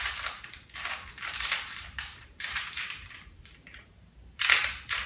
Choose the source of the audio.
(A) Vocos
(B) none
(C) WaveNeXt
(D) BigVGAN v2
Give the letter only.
D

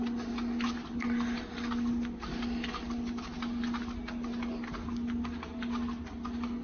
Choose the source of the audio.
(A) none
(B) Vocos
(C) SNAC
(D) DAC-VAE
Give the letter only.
A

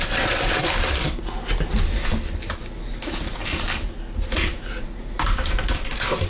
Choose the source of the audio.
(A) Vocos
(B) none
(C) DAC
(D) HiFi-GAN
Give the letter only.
B